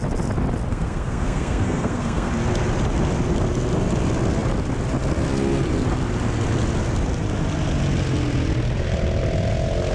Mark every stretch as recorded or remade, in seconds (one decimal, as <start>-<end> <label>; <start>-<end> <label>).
0.0-0.7 recorded; 0.7-2.3 remade; 2.3-9.9 recorded